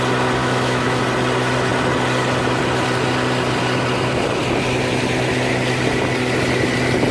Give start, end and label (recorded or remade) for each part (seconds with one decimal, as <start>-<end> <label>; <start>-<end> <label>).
0.0-0.4 recorded; 0.4-1.0 remade; 1.0-7.1 recorded